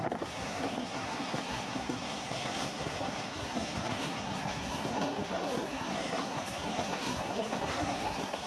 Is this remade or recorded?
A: remade